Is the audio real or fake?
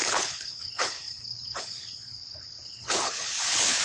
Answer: fake